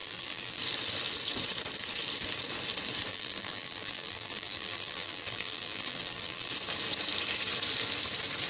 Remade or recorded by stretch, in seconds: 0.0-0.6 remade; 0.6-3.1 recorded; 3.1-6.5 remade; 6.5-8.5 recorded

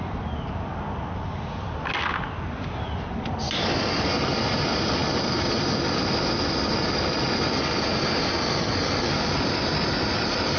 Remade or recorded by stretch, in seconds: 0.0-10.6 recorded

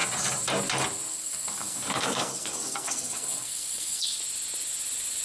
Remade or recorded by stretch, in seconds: 0.0-1.1 recorded; 1.1-4.2 remade; 4.2-5.2 recorded

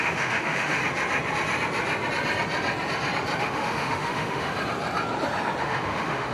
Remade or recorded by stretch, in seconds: 0.0-0.8 remade; 0.8-3.4 recorded; 3.4-4.5 remade; 4.5-5.6 recorded; 5.6-6.3 remade

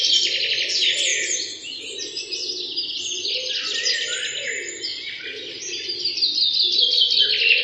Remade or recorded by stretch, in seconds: 0.0-7.6 recorded

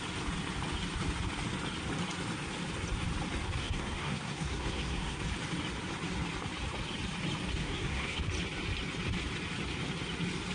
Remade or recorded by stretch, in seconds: 0.0-3.6 recorded; 3.6-5.2 remade; 5.2-7.6 recorded; 7.6-8.2 remade; 8.2-10.5 recorded

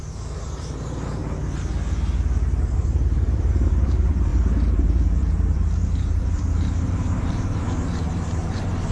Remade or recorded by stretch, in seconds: 0.0-1.2 remade; 1.2-2.7 recorded; 2.7-8.9 remade